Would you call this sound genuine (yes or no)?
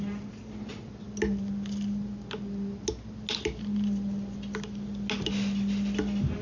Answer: yes